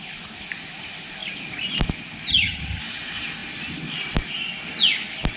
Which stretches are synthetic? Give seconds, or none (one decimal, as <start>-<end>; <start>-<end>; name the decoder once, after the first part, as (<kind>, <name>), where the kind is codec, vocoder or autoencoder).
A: 2.3-2.8 (vocoder, HiFi-GAN)